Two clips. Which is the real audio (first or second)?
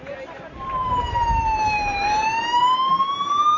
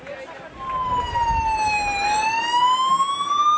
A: second